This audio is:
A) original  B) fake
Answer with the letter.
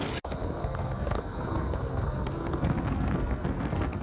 B